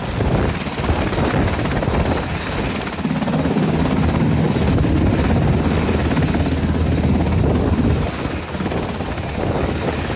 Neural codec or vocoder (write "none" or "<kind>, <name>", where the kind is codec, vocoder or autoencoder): none